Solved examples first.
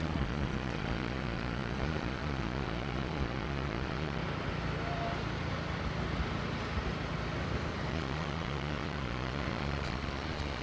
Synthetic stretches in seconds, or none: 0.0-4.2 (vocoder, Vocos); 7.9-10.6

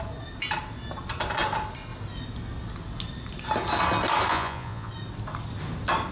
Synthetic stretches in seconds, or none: 4.3-4.9 (vocoder, Vocos)

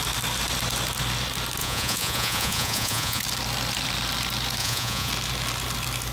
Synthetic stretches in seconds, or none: 1.6-3.2 (vocoder, Vocos); 4.6-5.1

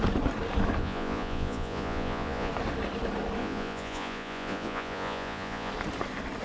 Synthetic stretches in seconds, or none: 0.8-2.5 (vocoder, Vocos); 3.4-5.7

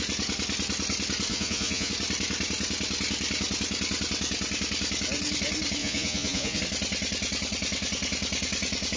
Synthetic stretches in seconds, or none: 1.3-1.9 (vocoder, Vocos); 5.8-6.6

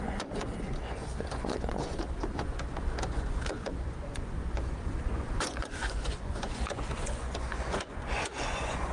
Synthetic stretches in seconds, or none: 0.0-8.9 (vocoder, Vocos)

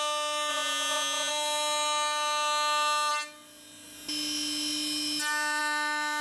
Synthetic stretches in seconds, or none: 0.5-1.3 (vocoder, Vocos)